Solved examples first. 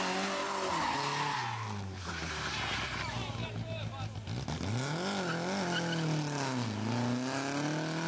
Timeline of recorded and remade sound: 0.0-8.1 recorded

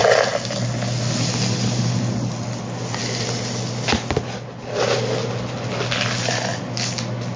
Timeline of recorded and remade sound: 0.0-7.4 recorded

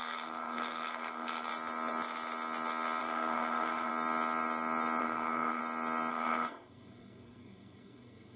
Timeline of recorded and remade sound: 0.0-1.5 remade; 1.5-3.0 recorded; 3.0-3.9 remade; 3.9-5.0 recorded; 5.0-5.6 remade; 5.6-6.1 recorded; 6.1-8.4 remade

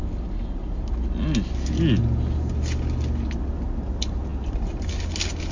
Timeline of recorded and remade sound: 0.0-5.5 recorded

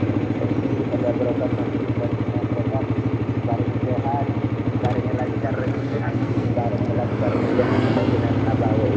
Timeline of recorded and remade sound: 0.0-5.7 recorded; 5.7-6.5 remade; 6.5-7.5 recorded; 7.5-8.1 remade; 8.1-9.0 recorded

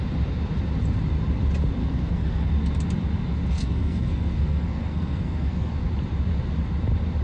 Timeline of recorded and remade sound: 0.0-1.8 recorded; 1.8-2.5 remade; 2.5-3.5 recorded; 3.5-5.7 remade; 5.7-7.2 recorded